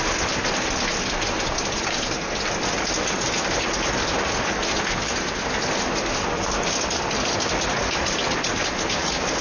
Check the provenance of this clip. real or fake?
real